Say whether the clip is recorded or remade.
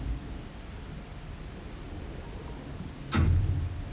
recorded